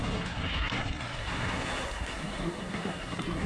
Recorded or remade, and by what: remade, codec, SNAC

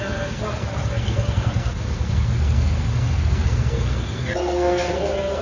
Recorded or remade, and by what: remade, codec, SNAC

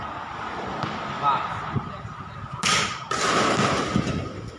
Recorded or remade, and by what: recorded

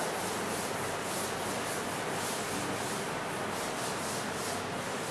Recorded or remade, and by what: recorded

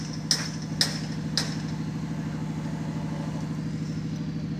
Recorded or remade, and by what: recorded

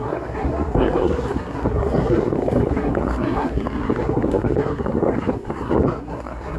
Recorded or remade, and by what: remade, codec, SNAC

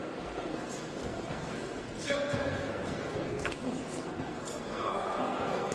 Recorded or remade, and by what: remade, codec, SNAC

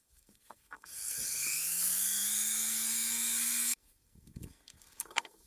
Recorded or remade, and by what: remade, codec, SNAC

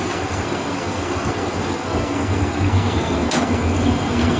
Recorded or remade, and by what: remade, codec, SNAC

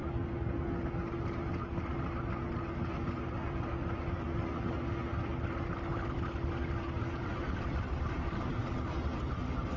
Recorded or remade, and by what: recorded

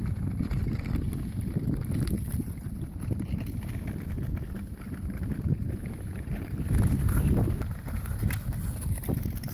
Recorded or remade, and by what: recorded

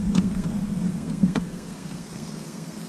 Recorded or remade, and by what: remade, codec, SNAC